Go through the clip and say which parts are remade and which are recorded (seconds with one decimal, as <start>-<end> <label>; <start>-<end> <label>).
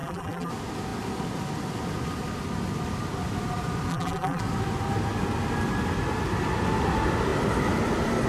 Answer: 0.0-0.5 remade; 0.5-3.9 recorded; 3.9-4.4 remade; 4.4-8.3 recorded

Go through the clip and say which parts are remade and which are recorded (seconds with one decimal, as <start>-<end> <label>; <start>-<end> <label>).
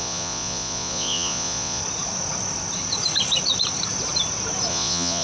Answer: 0.0-1.8 remade; 1.8-4.7 recorded; 4.7-5.2 remade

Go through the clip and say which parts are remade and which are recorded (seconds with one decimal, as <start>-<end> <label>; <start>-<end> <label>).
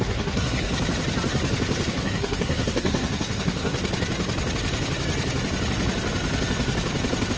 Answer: 0.0-0.7 remade; 0.7-1.9 recorded; 1.9-3.8 remade; 3.8-7.4 recorded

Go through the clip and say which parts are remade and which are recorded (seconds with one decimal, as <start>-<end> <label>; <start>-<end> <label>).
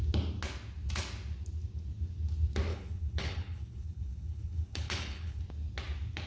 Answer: 0.0-2.7 recorded; 2.7-5.4 remade; 5.4-6.3 recorded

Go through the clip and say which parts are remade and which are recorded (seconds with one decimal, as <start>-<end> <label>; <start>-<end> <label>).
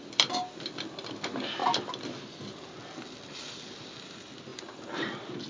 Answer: 0.0-5.5 recorded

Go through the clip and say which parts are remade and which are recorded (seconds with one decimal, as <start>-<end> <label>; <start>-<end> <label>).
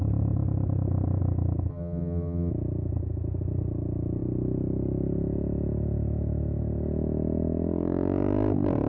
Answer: 0.0-1.7 recorded; 1.7-2.5 remade; 2.5-8.9 recorded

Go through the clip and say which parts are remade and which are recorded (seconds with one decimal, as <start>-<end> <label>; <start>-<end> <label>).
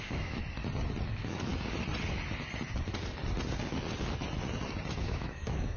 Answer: 0.0-0.4 remade; 0.4-1.1 recorded; 1.1-1.5 remade; 1.5-5.0 recorded; 5.0-5.8 remade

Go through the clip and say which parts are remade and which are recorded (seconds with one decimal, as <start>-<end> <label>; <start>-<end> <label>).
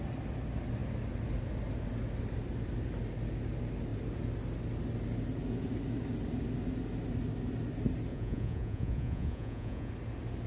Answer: 0.0-8.1 recorded; 8.1-9.9 remade; 9.9-10.5 recorded